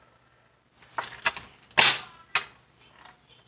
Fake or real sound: real